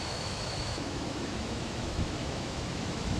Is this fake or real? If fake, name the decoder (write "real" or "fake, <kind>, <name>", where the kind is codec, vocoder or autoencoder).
fake, autoencoder, DAC-VAE